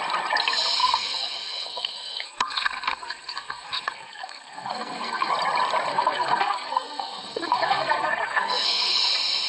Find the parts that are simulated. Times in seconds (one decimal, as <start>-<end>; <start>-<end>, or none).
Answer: 0.8-5.3; 5.9-9.0